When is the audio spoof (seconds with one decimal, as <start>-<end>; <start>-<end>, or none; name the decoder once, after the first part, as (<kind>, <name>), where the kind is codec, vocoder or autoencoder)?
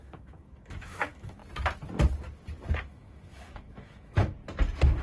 0.0-1.4 (autoencoder, DAC-VAE); 2.8-4.4